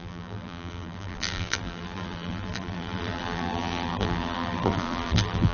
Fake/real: fake